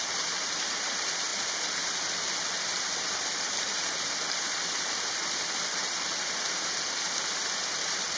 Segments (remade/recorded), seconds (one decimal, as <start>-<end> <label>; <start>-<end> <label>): 0.0-8.2 recorded